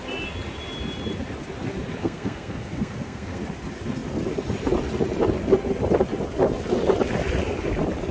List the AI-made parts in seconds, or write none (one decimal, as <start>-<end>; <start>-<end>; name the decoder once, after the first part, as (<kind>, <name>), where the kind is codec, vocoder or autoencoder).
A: 2.0-3.4 (codec, SNAC)